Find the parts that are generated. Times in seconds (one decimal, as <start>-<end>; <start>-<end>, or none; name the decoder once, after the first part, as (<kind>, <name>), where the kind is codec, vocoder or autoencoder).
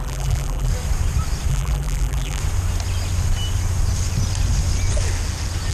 0.0-0.7 (vocoder, BigVGAN v2); 1.5-2.4